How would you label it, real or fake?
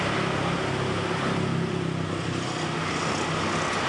real